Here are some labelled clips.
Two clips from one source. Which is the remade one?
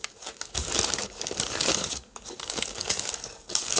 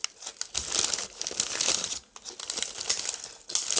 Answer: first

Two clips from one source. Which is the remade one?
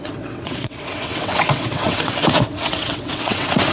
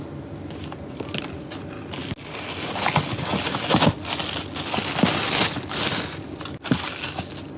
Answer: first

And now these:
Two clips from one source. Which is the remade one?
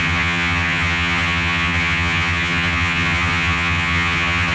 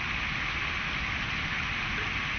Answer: first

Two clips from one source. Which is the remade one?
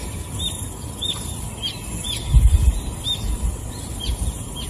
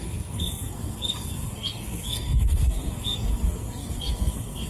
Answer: second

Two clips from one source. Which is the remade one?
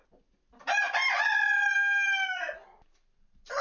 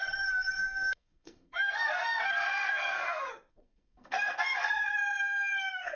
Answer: second